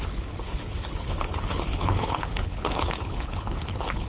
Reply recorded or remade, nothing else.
remade